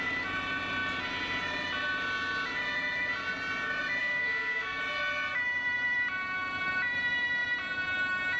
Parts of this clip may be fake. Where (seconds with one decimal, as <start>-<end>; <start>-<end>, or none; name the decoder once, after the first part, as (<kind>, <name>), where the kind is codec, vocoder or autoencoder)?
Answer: 4.0-4.8 (codec, DAC)